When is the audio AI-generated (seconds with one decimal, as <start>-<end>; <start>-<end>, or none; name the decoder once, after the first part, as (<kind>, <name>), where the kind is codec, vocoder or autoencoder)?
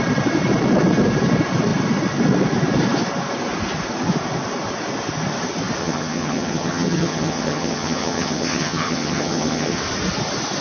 5.8-9.8 (vocoder, HiFi-GAN)